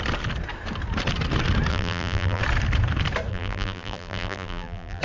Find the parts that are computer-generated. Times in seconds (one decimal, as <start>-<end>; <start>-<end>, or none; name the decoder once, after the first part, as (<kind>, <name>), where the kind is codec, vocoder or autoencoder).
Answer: 1.7-2.4 (vocoder, BigVGAN v2); 3.3-5.0